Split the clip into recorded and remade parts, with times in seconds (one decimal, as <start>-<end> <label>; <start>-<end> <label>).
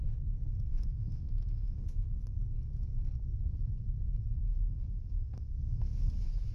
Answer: 0.0-0.7 recorded; 0.7-2.4 remade; 2.4-4.5 recorded; 4.5-6.0 remade; 6.0-6.5 recorded